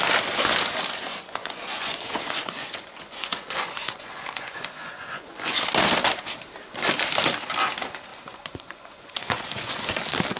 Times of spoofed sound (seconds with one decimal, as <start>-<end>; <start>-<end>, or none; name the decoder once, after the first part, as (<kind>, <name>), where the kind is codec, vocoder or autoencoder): 1.1-5.6 (vocoder, Vocos); 8.1-10.0